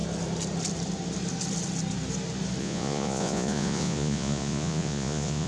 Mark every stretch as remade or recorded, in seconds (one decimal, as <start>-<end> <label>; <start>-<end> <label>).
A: 0.0-2.6 recorded; 2.6-5.5 remade